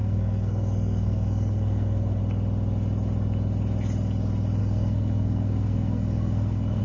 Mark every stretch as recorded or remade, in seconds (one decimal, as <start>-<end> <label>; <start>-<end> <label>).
0.0-2.2 remade; 2.2-4.6 recorded; 4.6-6.8 remade